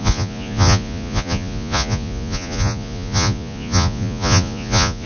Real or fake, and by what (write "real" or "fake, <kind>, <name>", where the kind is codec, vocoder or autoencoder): fake, vocoder, Vocos